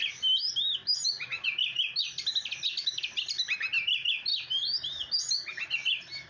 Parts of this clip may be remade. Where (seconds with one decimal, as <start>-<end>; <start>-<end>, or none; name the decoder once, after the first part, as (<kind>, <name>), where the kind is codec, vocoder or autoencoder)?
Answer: none

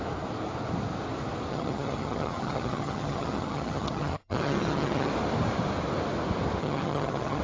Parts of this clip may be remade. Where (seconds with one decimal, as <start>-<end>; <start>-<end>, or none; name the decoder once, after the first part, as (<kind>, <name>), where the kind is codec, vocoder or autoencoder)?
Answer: 1.5-5.1 (vocoder, HiFi-GAN); 6.6-7.4

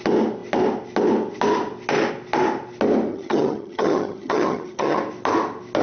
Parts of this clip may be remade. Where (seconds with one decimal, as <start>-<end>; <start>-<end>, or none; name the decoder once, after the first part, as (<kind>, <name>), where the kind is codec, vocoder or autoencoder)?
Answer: 3.1-5.0 (vocoder, HiFi-GAN)

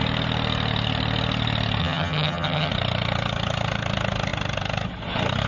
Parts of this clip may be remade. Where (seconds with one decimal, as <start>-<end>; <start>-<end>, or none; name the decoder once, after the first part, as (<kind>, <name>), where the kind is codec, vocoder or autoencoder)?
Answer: 1.8-2.7 (vocoder, HiFi-GAN)

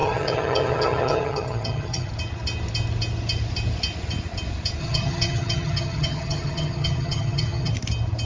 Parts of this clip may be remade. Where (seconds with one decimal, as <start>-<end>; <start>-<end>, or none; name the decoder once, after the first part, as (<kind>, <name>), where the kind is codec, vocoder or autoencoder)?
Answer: 0.0-2.1 (vocoder, HiFi-GAN); 4.8-7.7